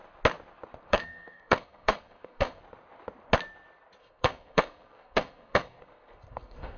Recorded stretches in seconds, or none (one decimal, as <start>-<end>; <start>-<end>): 0.0-0.9; 2.6-4.0